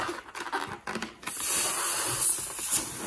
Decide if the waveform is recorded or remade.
recorded